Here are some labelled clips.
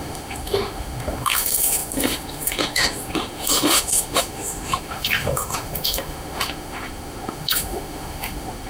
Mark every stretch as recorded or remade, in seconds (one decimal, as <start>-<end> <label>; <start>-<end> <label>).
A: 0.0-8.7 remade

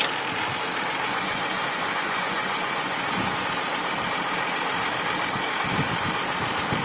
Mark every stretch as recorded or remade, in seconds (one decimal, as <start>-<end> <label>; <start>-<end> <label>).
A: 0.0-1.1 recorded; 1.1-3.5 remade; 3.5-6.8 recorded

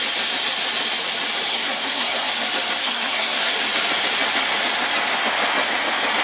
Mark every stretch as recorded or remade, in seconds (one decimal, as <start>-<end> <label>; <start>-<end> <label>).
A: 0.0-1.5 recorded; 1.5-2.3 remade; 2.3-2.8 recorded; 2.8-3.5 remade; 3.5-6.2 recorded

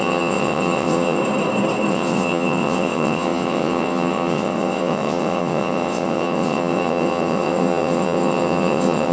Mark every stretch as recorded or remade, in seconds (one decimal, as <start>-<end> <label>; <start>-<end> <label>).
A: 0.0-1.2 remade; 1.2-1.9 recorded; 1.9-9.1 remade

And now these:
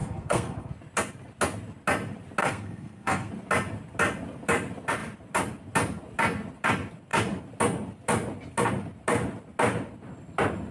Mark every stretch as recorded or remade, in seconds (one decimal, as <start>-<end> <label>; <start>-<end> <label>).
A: 0.0-0.7 remade; 0.7-2.4 recorded; 2.4-3.3 remade; 3.3-10.7 recorded